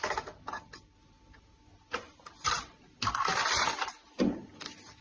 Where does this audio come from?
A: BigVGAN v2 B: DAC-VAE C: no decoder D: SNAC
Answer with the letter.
C